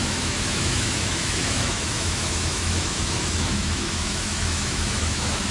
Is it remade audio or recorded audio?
remade